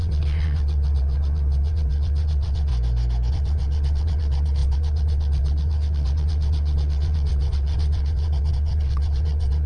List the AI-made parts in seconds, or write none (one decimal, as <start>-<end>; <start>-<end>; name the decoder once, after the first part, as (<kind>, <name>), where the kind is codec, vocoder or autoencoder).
0.0-2.7 (vocoder, WaveNeXt); 3.3-9.7